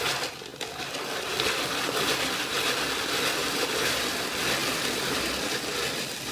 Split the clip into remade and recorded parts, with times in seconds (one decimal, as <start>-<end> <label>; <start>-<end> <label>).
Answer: 0.0-6.3 recorded